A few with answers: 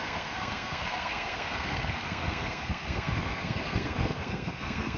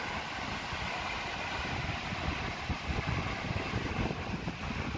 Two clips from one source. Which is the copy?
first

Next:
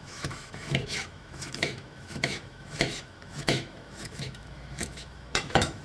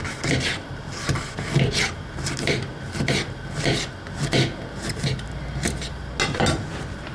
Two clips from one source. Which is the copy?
first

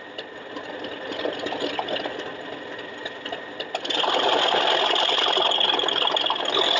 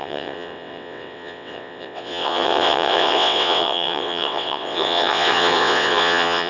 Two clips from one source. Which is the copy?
second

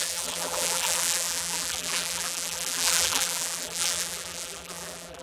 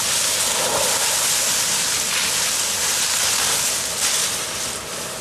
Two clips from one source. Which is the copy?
first